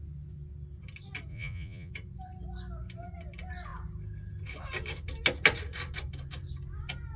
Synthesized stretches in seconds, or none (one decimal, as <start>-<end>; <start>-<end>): 1.3-1.9